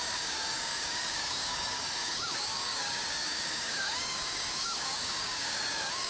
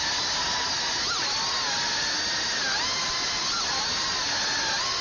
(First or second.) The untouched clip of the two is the second